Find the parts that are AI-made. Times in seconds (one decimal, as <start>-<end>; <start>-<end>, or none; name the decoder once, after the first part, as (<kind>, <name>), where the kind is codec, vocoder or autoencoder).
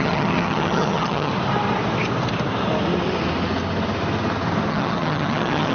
0.0-1.3 (vocoder, HiFi-GAN); 4.7-5.7